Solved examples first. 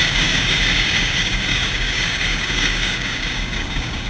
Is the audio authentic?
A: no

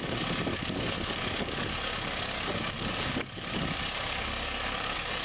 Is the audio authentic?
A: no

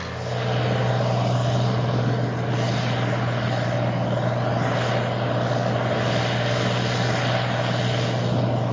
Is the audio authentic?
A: yes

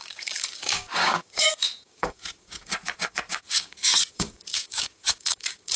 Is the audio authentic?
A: no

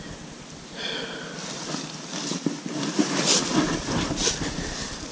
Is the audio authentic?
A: yes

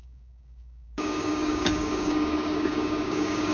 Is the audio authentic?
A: no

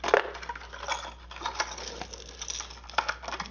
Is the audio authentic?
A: yes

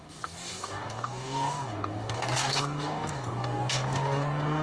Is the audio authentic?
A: no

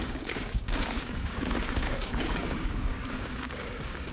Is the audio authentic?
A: no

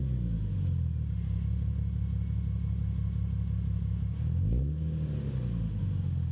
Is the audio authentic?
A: yes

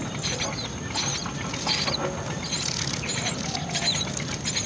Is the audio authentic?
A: yes